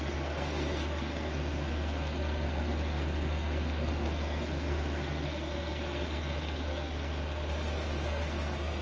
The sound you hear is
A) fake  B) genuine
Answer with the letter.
A